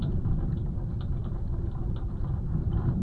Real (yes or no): yes